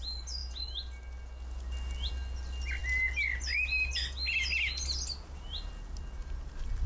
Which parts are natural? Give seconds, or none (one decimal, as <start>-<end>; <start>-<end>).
0.0-6.9